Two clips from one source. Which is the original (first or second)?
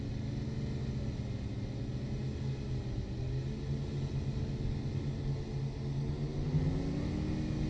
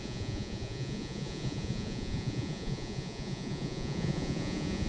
first